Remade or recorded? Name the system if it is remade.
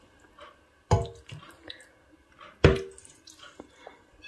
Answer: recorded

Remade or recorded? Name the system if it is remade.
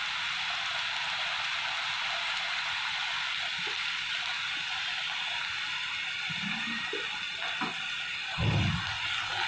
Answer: recorded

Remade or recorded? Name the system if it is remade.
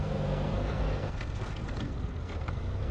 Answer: remade, codec, SNAC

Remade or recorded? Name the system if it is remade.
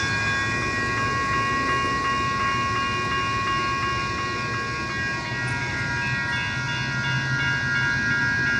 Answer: recorded